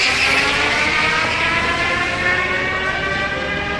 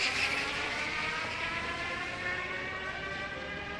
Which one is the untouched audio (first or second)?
first